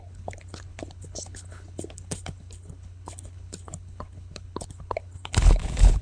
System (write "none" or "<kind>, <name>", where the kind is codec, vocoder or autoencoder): codec, HILCodec